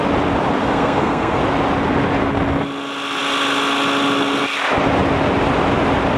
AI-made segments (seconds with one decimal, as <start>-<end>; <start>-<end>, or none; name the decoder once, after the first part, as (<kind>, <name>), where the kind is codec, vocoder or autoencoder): 0.6-1.4 (codec, SNAC)